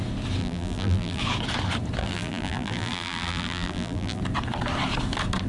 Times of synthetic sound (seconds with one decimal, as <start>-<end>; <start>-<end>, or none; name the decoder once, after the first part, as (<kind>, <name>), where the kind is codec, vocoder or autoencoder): 0.4-1.2 (vocoder, BigVGAN v2); 2.0-4.2